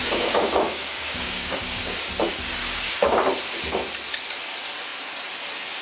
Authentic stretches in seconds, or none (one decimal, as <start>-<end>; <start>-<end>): 2.1-2.6; 3.2-5.8